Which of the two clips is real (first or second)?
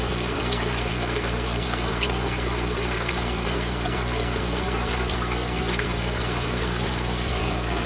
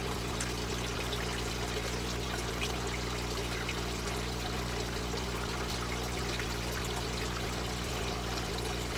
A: second